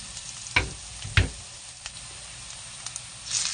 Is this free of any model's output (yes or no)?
yes